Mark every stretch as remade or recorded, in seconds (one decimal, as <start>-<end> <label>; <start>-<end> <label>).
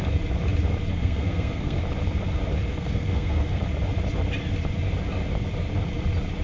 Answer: 0.0-0.9 recorded; 0.9-1.8 remade; 1.8-2.7 recorded; 2.7-3.6 remade; 3.6-6.4 recorded